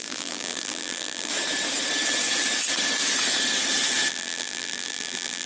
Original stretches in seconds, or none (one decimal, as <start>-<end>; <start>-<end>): 1.3-4.1